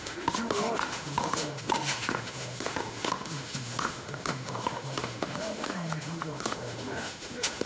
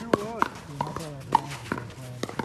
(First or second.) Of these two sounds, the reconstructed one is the first